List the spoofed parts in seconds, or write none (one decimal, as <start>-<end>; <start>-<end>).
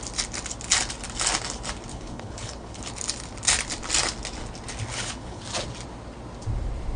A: 1.9-2.9; 4.9-5.4